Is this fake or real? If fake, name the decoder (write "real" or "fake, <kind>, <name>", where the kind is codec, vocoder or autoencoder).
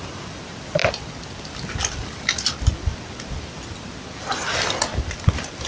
fake, vocoder, BigVGAN v2